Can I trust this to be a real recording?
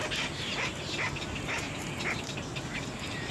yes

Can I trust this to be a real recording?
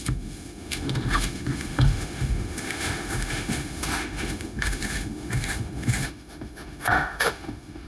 no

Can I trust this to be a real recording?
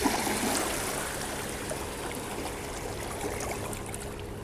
yes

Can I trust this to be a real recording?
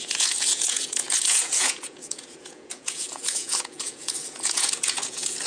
no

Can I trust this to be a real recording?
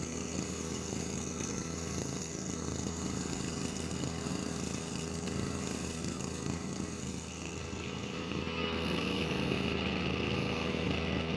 no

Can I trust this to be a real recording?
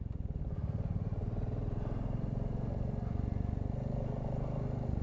yes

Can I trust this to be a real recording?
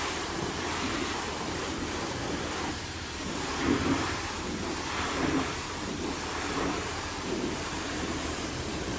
no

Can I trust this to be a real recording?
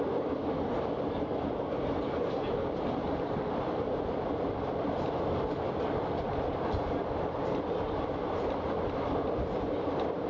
yes